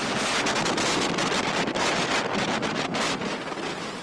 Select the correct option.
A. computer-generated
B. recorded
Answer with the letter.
B